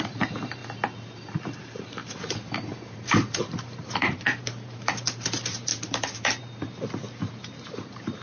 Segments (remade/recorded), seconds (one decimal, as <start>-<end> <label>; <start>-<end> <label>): 0.0-0.6 remade; 0.6-1.4 recorded; 1.4-5.7 remade; 5.7-6.4 recorded; 6.4-8.2 remade